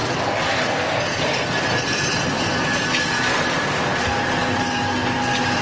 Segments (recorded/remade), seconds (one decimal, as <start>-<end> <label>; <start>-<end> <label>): 0.0-2.2 remade; 2.2-3.9 recorded; 3.9-4.9 remade; 4.9-5.6 recorded